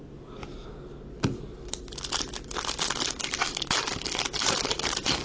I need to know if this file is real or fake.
real